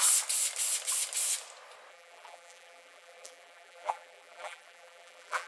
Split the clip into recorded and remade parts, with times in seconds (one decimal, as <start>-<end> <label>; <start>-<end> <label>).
0.0-1.9 recorded; 1.9-5.5 remade